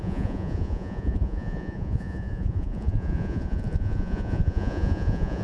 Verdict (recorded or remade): remade